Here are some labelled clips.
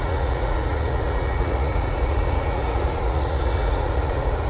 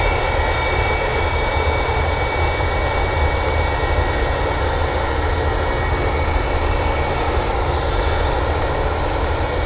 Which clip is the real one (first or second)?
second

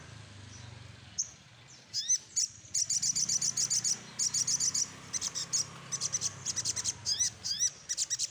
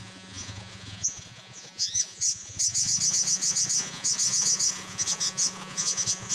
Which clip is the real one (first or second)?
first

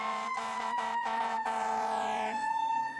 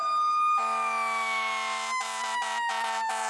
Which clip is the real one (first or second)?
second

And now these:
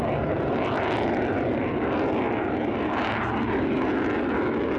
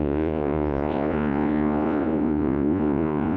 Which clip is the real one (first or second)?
first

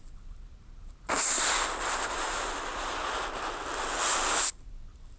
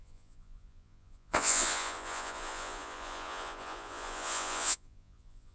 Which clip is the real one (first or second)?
first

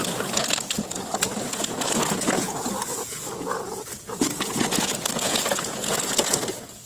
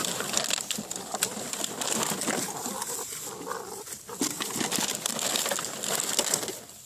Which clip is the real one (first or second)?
second